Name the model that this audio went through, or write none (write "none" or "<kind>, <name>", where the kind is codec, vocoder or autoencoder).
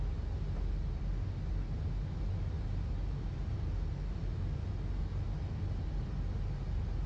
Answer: none